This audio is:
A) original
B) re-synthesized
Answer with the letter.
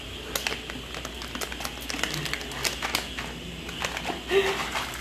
A